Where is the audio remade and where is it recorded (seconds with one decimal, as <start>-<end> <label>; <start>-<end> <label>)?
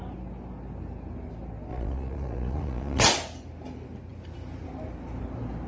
0.0-1.7 recorded; 1.7-3.0 remade; 3.0-5.7 recorded